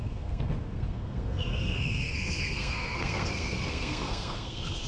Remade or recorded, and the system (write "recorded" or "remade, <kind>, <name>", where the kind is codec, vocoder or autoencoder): remade, codec, SNAC